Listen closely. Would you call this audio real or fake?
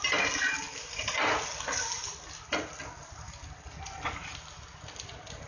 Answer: real